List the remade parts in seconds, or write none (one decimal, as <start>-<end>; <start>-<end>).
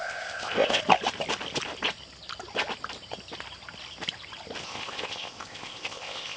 0.0-0.8; 4.6-6.4